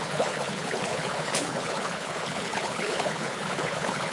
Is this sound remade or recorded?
remade